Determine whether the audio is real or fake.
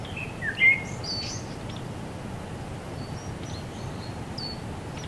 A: real